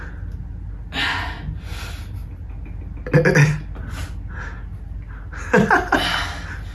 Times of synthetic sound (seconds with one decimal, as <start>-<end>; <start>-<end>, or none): none